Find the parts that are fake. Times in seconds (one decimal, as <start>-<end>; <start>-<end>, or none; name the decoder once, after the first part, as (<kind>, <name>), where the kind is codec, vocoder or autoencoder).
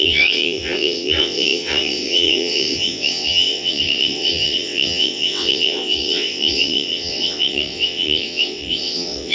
0.0-9.3 (vocoder, WaveNeXt)